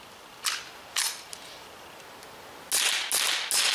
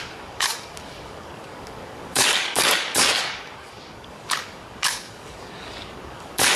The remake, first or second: second